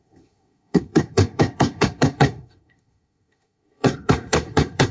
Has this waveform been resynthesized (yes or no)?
yes